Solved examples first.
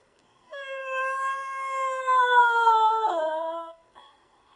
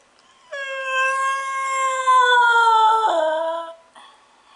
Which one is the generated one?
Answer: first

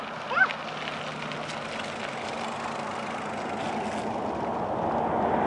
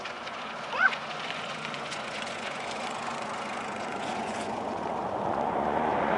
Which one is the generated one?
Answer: second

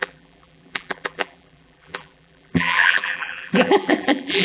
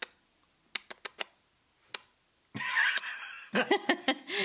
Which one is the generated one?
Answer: first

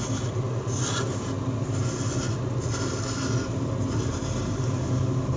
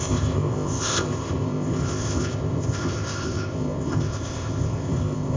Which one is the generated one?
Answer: second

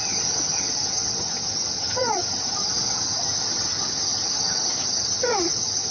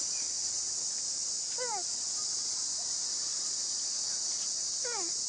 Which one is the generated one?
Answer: first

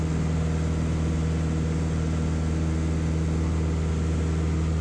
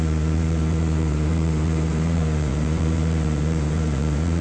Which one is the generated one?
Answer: second